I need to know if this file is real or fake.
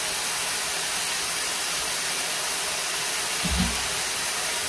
real